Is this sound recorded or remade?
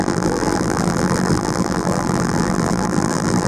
remade